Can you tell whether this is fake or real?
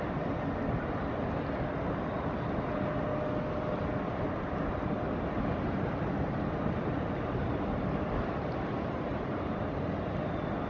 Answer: real